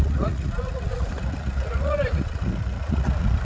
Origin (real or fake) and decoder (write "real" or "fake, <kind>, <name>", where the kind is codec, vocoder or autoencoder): fake, vocoder, Vocos